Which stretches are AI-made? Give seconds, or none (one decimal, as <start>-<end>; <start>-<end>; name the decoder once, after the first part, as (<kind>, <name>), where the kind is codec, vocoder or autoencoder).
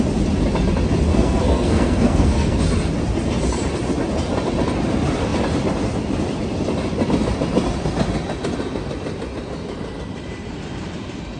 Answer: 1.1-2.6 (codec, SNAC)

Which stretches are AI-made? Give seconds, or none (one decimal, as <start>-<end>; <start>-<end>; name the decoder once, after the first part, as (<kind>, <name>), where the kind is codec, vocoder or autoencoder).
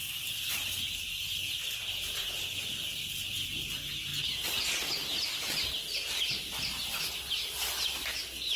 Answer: none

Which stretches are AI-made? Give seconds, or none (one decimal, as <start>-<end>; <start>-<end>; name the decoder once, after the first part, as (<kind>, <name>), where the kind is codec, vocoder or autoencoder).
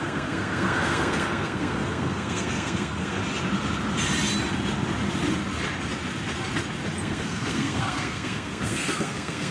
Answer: 0.0-3.2 (codec, SNAC); 7.0-9.5